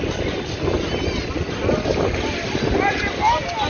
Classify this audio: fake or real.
real